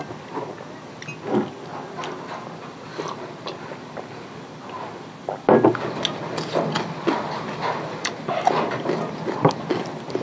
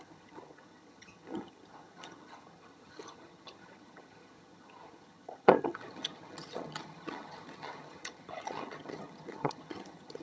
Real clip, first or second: first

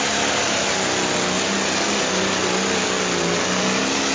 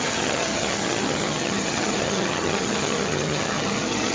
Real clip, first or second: first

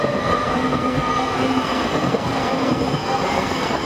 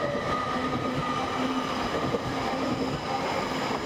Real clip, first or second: second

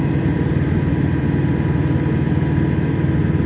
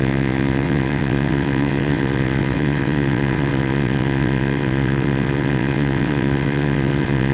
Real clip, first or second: first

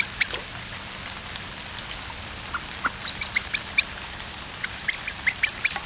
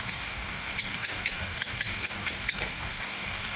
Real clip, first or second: first